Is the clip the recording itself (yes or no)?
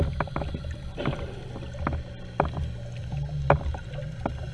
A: yes